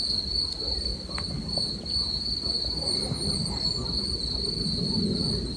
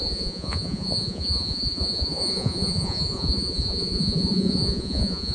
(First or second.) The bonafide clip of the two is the first